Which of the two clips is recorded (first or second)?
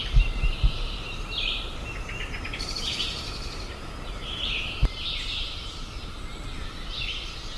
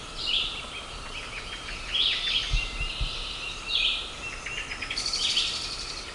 second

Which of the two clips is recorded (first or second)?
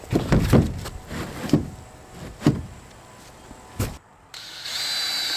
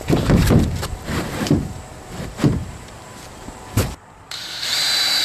first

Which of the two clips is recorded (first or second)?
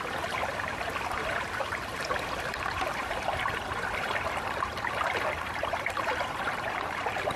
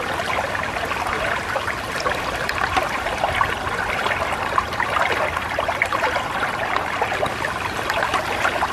second